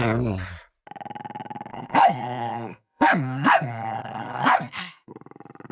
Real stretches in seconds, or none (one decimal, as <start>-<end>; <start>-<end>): 0.0-1.7; 5.1-5.7